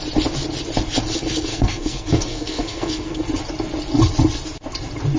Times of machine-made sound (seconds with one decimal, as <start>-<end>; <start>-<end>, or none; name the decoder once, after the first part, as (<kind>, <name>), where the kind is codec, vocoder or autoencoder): 1.5-3.2 (codec, SNAC)